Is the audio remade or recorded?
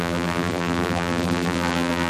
remade